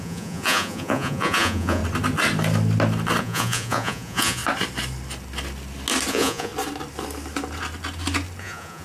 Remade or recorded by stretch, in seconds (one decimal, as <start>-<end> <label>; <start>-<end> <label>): 0.0-1.8 remade; 1.8-3.2 recorded; 3.2-4.4 remade; 4.4-6.1 recorded; 6.1-6.5 remade; 6.5-8.4 recorded; 8.4-8.8 remade